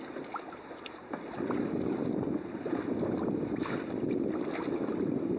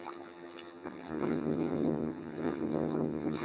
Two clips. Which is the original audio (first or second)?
first